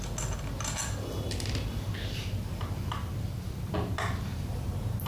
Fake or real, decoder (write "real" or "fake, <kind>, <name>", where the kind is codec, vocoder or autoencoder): real